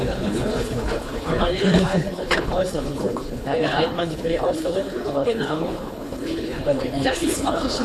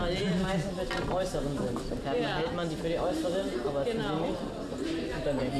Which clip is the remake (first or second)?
first